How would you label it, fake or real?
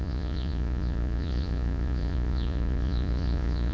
fake